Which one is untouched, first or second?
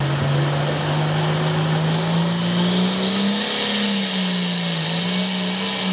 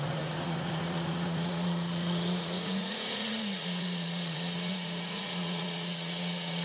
first